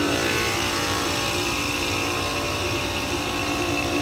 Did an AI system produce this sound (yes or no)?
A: yes